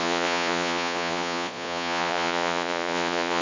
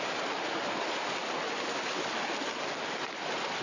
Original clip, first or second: second